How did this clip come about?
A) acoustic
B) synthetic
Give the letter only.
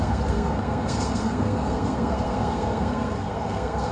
B